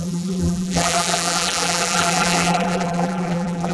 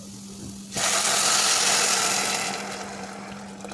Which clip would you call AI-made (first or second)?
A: first